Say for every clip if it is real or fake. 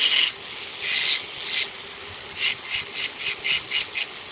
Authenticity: real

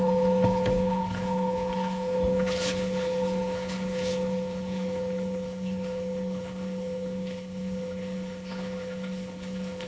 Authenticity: fake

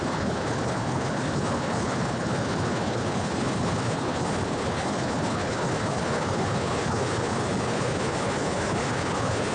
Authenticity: fake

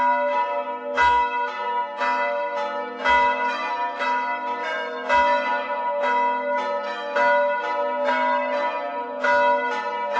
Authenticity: real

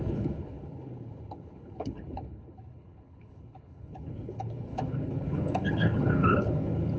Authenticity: fake